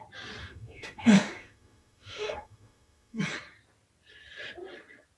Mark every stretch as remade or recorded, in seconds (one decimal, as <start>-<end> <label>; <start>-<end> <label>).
0.0-0.4 recorded; 0.4-3.2 remade; 3.2-5.2 recorded